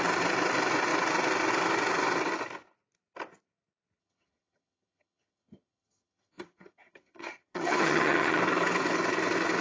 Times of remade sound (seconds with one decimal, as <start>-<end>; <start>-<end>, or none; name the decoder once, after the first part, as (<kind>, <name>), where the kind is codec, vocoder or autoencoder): 4.0-8.4 (vocoder, HiFi-GAN)